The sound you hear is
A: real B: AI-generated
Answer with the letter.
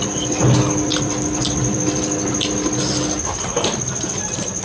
A